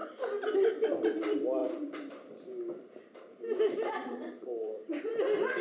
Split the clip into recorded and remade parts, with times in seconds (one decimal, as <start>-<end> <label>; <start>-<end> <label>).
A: 0.0-1.6 recorded; 1.6-5.0 remade; 5.0-5.6 recorded